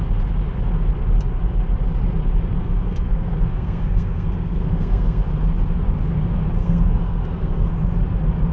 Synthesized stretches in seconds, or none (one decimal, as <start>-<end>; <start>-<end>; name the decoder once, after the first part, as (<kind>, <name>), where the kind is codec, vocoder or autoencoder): 2.6-5.2 (codec, SNAC); 6.6-7.7